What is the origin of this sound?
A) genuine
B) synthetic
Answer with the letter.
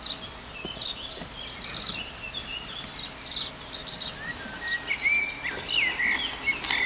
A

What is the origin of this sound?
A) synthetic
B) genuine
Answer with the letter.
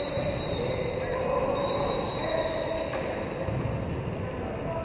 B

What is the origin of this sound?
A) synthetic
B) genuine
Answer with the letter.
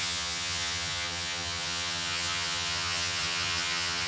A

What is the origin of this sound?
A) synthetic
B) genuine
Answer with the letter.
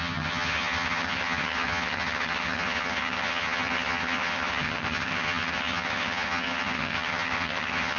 A